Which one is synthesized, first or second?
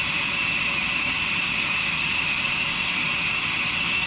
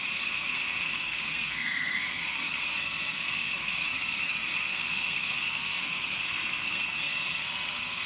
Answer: second